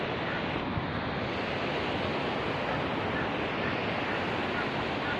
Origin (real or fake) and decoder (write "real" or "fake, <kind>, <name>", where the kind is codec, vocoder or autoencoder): real